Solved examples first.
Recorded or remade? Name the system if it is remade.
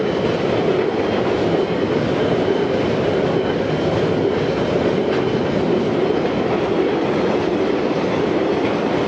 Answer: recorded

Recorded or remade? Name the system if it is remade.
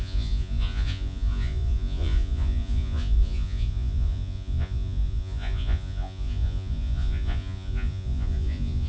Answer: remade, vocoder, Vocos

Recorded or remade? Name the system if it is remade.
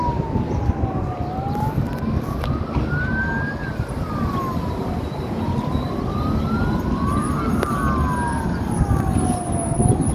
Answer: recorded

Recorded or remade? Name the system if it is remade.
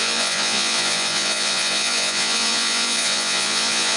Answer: remade, vocoder, Vocos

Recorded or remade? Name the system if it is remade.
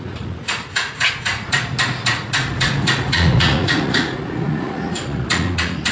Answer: remade, vocoder, Vocos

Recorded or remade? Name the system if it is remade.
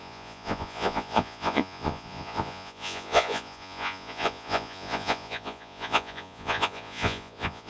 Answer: remade, vocoder, Vocos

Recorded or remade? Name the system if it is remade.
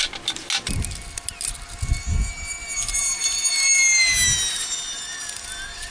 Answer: recorded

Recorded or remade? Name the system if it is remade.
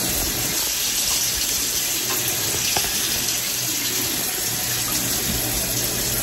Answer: recorded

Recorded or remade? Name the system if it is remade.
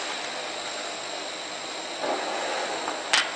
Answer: recorded